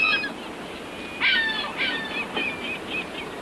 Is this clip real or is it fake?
real